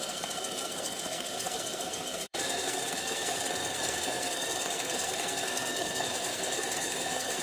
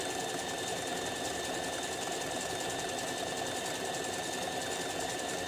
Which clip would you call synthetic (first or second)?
first